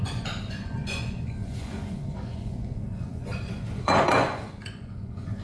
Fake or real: fake